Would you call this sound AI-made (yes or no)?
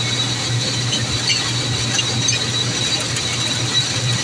no